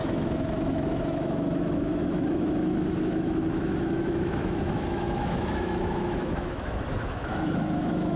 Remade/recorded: remade